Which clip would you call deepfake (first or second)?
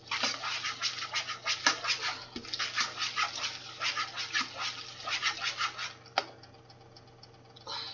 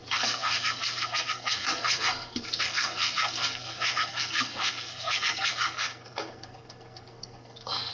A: second